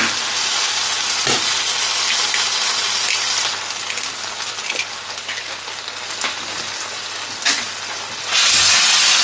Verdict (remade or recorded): recorded